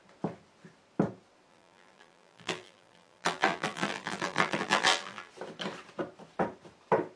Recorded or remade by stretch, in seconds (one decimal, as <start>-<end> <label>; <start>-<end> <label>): 0.0-1.5 recorded; 1.5-5.3 remade; 5.3-7.2 recorded